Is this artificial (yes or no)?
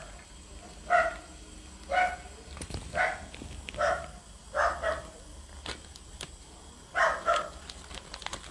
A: no